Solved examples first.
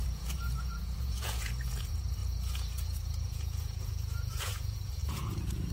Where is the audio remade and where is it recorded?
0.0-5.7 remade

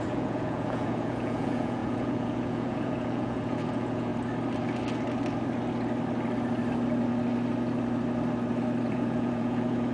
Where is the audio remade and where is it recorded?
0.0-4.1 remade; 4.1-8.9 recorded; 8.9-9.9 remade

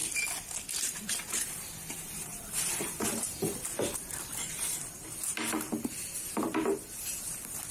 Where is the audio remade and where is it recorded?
0.0-0.7 recorded; 0.7-7.7 remade

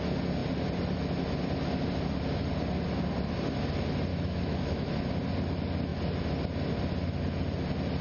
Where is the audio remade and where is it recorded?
0.0-4.1 recorded; 4.1-4.9 remade; 4.9-8.0 recorded